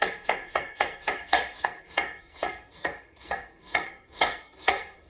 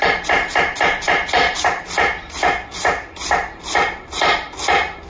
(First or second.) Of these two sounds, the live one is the second